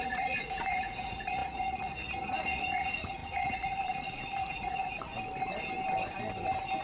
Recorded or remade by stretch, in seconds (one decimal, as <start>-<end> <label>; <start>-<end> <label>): 0.0-5.1 remade; 5.1-6.8 recorded